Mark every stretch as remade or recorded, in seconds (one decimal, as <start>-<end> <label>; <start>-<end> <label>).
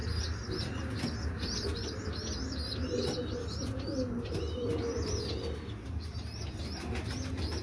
0.0-7.6 recorded